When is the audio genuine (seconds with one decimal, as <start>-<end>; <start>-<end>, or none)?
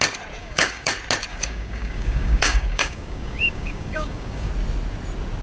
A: 0.0-0.4; 0.9-1.3; 4.5-5.4